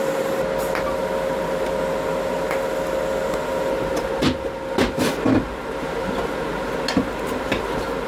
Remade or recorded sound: recorded